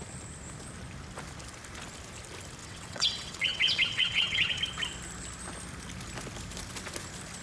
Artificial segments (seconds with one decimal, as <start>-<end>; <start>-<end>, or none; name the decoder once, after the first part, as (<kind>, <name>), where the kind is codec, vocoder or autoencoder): 2.6-4.6 (vocoder, WaveNeXt)